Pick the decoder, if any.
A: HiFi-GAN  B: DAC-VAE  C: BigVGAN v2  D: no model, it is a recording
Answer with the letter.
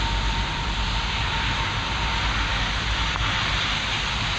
D